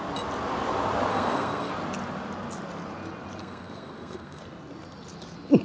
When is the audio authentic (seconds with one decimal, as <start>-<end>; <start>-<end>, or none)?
0.0-1.1; 1.7-3.4; 4.4-5.6